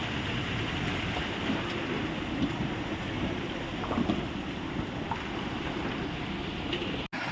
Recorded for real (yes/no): yes